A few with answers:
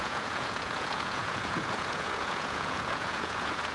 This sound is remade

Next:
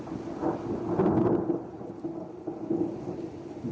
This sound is recorded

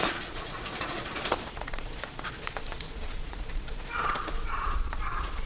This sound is remade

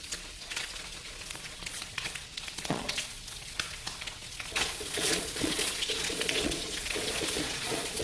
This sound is remade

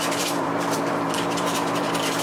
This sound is remade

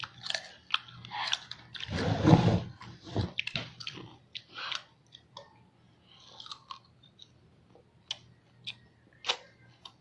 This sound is recorded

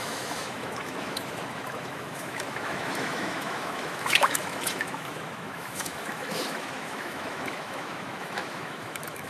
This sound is remade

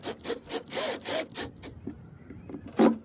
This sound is recorded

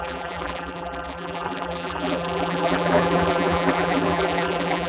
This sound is remade